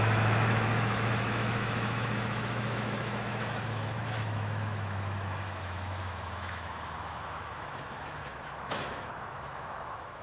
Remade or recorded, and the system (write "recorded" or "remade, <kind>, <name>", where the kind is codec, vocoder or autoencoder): remade, autoencoder, DAC-VAE